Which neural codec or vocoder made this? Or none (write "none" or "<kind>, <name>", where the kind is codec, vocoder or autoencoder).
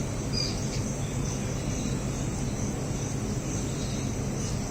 none